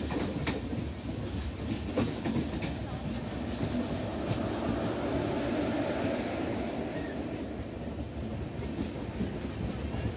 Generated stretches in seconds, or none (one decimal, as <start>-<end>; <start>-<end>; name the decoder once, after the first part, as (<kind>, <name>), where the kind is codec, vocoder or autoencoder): none